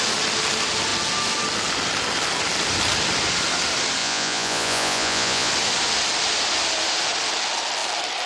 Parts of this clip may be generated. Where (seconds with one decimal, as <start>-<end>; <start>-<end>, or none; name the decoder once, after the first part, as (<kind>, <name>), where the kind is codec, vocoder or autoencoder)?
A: 4.0-5.5 (vocoder, Vocos)